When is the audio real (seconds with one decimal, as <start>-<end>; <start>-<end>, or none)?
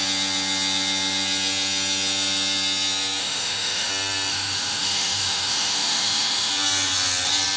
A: 0.0-3.2; 3.9-4.3; 6.5-7.6